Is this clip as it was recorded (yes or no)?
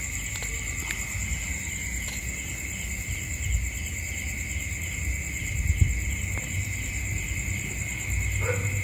yes